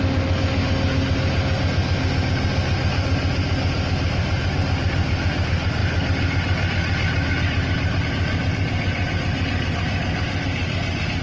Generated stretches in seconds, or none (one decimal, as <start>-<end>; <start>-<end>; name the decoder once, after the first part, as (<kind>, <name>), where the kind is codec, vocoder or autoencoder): none